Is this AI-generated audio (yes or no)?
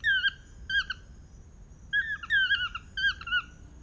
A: no